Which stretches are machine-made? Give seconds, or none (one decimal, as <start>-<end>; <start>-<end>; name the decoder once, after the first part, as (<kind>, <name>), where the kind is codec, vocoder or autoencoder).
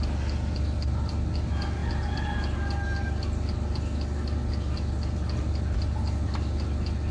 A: none